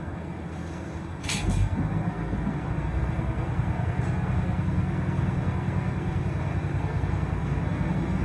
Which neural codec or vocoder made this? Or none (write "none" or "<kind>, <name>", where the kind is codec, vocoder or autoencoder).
codec, SNAC